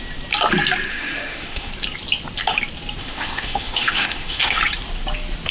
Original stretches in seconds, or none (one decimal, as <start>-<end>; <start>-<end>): 0.0-0.9; 1.7-3.0; 4.6-5.5